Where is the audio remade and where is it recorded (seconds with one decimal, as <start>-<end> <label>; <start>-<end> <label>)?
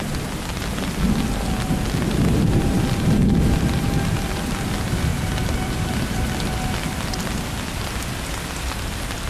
0.0-5.1 recorded; 5.1-5.9 remade; 5.9-9.3 recorded